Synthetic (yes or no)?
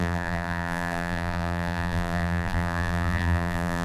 yes